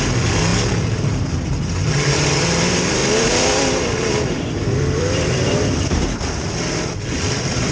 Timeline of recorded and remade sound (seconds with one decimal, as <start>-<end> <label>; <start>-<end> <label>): 0.0-0.5 recorded; 0.5-2.1 remade; 2.1-3.0 recorded; 3.0-6.2 remade; 6.2-7.7 recorded